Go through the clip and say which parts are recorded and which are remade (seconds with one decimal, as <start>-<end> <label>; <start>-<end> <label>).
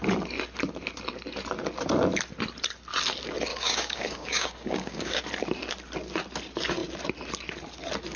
0.0-3.5 recorded; 3.5-5.2 remade; 5.2-8.2 recorded